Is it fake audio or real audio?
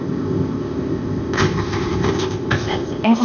fake